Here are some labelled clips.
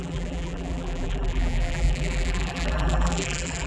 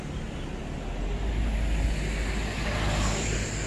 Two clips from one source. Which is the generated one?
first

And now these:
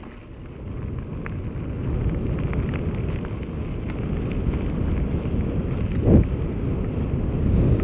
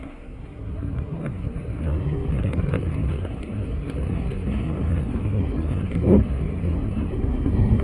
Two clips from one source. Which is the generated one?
second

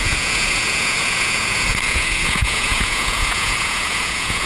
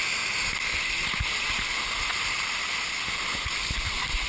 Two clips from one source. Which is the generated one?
first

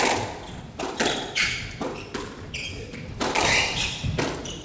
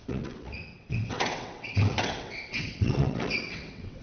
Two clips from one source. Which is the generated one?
second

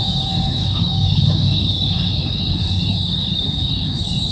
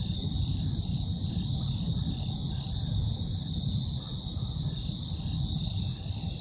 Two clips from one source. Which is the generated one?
first